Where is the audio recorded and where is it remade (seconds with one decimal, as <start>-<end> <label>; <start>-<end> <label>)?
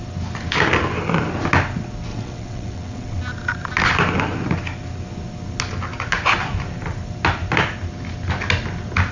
0.0-2.1 recorded; 2.1-3.2 remade; 3.2-9.1 recorded